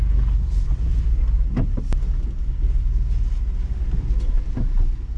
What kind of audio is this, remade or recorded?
recorded